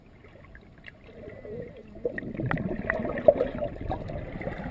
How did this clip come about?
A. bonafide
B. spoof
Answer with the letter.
A